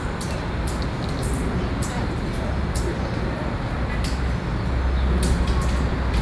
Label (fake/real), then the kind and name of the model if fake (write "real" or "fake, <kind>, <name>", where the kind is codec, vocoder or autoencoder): real